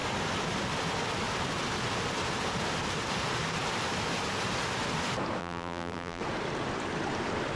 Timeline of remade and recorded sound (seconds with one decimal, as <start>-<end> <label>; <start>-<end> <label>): 0.0-5.4 recorded; 5.4-6.2 remade; 6.2-7.6 recorded